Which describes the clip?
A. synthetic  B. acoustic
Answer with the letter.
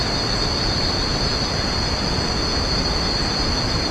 B